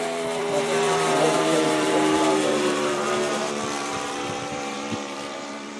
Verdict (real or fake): fake